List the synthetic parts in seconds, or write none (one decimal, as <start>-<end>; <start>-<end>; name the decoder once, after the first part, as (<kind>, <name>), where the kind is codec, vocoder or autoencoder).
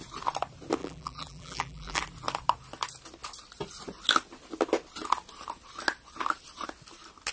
0.8-2.0 (vocoder, BigVGAN v2)